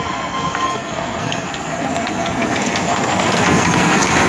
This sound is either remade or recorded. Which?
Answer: remade